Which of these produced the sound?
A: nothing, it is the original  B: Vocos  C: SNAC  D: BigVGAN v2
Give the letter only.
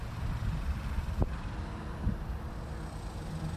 A